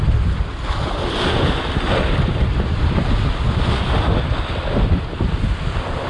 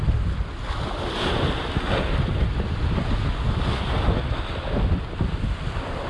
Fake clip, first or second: first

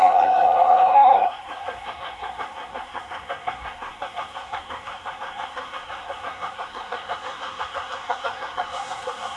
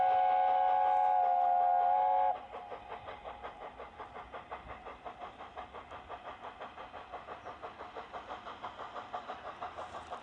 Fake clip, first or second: first